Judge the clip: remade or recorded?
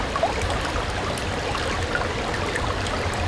recorded